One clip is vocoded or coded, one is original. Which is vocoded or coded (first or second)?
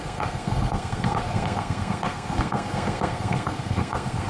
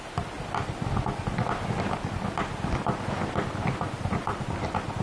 first